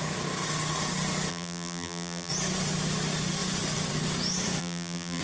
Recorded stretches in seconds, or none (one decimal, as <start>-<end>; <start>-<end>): 0.0-1.3; 2.3-4.6